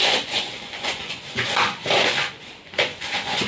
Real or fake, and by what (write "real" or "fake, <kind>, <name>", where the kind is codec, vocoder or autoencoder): fake, vocoder, Vocos